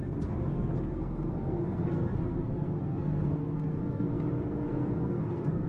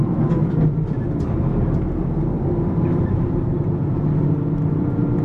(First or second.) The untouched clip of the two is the second